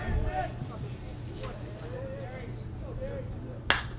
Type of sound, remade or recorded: recorded